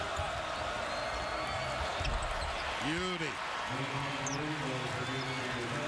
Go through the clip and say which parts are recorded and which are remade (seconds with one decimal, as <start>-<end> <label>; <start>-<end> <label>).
0.0-5.9 recorded